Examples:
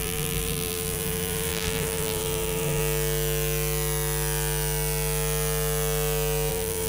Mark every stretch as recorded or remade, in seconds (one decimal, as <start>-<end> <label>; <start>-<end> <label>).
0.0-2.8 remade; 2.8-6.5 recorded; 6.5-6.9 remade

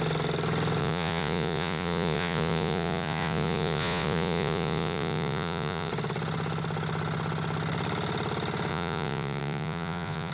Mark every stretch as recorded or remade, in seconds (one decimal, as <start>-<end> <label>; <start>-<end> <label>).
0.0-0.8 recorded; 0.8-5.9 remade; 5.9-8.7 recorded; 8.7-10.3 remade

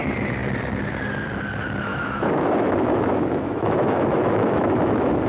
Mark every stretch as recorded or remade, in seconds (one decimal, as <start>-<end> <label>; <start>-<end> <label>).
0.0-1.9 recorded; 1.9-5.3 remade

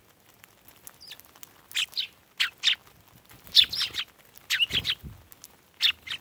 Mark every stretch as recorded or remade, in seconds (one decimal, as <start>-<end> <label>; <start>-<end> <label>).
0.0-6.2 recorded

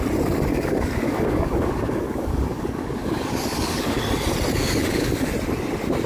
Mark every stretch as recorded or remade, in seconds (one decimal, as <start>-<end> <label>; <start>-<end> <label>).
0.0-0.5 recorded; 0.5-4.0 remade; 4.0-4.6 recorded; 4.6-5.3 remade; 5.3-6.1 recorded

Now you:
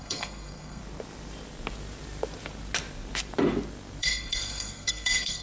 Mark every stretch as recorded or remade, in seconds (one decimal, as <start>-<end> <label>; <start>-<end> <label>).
0.0-0.8 remade; 0.8-4.0 recorded; 4.0-5.4 remade

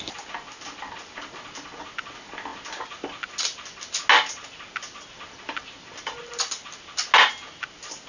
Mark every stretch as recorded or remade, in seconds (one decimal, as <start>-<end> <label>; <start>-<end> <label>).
0.0-8.1 recorded

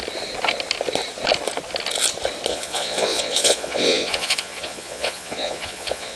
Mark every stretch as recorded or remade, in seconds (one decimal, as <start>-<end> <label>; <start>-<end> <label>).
0.0-2.5 recorded; 2.5-6.2 remade